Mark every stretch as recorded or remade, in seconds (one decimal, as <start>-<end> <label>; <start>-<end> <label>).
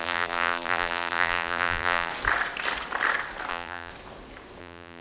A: 0.0-2.1 remade; 2.1-3.5 recorded; 3.5-3.9 remade; 3.9-4.6 recorded; 4.6-5.0 remade